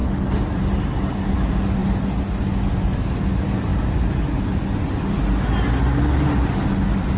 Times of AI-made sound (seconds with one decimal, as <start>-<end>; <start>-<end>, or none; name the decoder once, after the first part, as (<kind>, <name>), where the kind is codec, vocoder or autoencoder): none